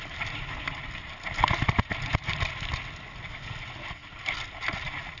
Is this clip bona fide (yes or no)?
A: yes